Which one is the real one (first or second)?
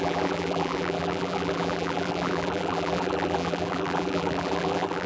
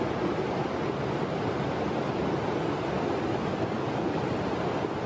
second